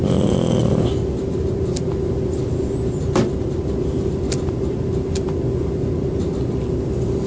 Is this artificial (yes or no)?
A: no